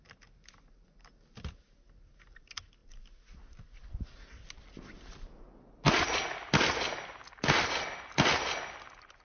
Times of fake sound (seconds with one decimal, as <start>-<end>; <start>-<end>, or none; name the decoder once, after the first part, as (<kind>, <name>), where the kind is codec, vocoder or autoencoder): none